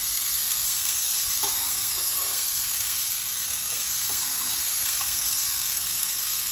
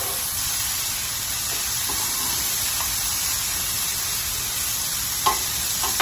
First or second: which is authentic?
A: second